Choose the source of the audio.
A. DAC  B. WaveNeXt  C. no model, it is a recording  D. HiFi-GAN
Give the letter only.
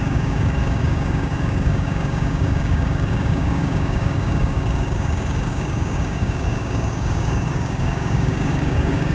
A